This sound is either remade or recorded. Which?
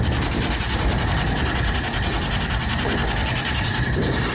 recorded